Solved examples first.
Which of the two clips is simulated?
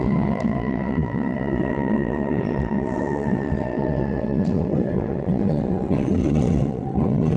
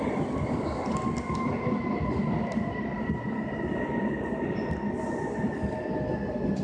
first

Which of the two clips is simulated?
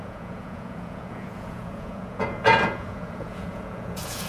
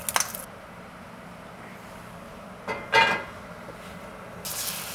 first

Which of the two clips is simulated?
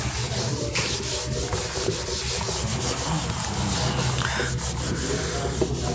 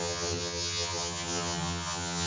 second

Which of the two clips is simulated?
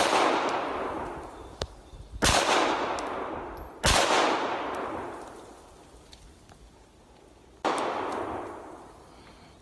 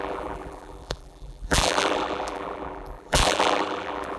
second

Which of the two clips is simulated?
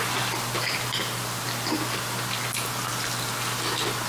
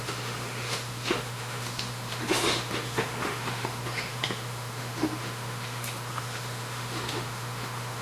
second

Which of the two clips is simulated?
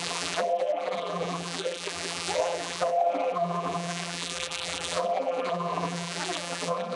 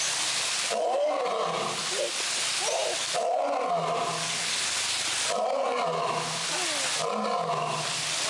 first